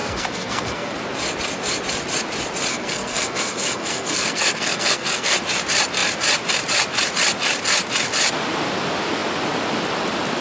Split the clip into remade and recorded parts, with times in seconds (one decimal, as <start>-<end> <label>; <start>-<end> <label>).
0.0-0.9 remade; 0.9-2.7 recorded; 2.7-5.4 remade; 5.4-10.4 recorded